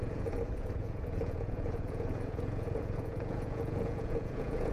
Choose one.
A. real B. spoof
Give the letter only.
B